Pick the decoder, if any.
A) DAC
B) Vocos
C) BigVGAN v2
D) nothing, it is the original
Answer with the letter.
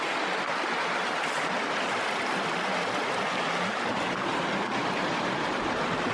D